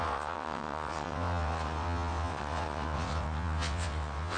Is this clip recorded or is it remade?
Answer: remade